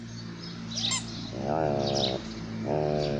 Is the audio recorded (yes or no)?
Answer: yes